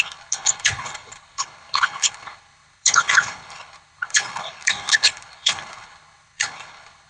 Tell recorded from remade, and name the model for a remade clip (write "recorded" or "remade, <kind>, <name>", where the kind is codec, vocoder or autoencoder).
remade, codec, HILCodec